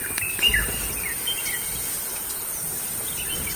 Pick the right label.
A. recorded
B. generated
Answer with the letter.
A